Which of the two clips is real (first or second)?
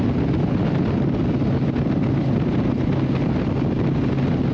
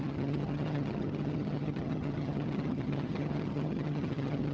first